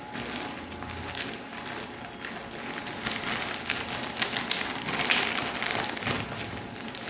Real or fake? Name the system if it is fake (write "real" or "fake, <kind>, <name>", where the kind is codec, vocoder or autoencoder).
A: real